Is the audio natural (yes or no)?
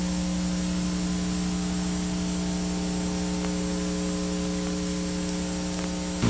yes